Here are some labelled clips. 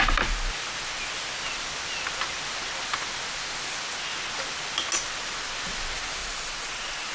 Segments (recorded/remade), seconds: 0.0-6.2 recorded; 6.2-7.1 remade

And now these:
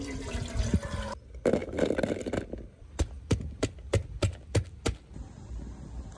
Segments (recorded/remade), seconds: 0.0-6.2 recorded

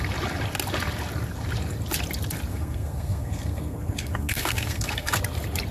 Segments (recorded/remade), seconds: 0.0-2.5 recorded; 2.5-5.2 remade; 5.2-5.7 recorded